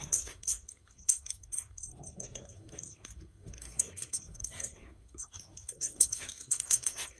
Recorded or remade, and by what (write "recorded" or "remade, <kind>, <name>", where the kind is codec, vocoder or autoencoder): remade, codec, SNAC